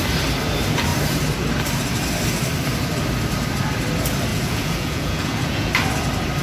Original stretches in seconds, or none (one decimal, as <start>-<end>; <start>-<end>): 0.0-4.3; 5.7-6.4